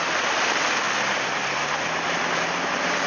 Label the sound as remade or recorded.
recorded